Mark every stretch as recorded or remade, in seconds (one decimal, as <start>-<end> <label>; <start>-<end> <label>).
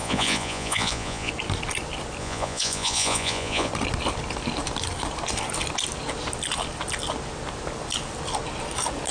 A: 0.0-1.3 remade; 1.3-2.2 recorded; 2.2-3.7 remade; 3.7-9.1 recorded